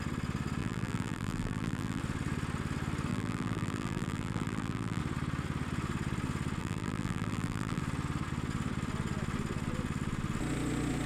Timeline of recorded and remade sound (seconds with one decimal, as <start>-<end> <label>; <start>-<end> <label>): 0.0-0.6 recorded; 0.6-2.0 remade; 2.0-3.1 recorded; 3.1-5.0 remade; 5.0-6.6 recorded; 6.6-7.8 remade; 7.8-11.1 recorded